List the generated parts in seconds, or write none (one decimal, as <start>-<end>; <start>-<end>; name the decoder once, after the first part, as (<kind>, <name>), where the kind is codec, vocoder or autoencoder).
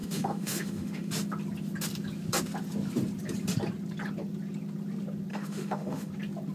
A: 0.0-1.1 (autoencoder, DAC-VAE); 5.3-6.1